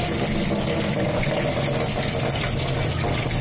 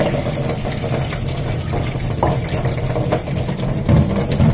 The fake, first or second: second